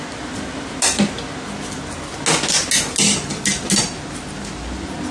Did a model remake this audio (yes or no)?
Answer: no